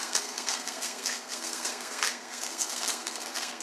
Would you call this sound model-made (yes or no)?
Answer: yes